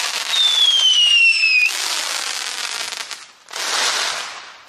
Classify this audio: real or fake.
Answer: real